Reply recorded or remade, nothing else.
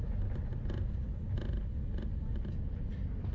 recorded